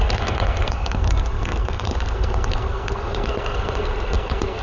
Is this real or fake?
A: fake